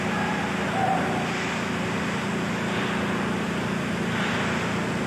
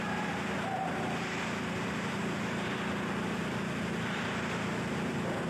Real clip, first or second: first